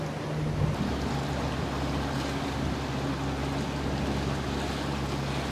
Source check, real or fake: real